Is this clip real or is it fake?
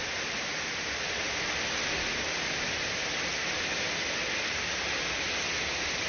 real